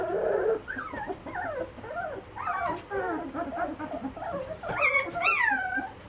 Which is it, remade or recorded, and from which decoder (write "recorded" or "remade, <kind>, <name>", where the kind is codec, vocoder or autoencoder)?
recorded